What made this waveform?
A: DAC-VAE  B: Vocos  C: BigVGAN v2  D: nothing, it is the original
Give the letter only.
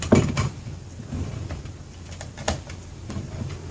C